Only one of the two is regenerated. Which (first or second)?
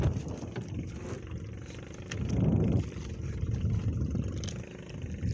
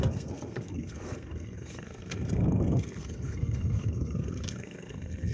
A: second